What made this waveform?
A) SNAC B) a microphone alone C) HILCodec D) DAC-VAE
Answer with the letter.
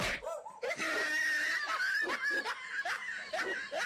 B